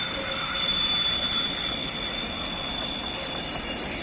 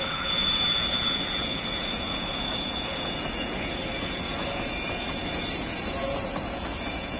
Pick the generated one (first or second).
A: second